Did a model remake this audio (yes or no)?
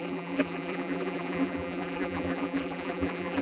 yes